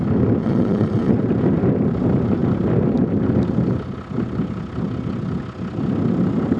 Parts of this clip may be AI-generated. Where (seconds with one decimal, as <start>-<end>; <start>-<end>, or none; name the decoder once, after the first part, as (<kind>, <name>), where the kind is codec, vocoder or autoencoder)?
0.4-1.1 (vocoder, Vocos)